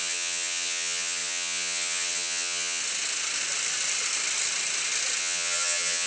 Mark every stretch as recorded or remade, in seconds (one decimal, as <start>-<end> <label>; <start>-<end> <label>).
0.0-2.8 remade; 2.8-5.2 recorded; 5.2-6.1 remade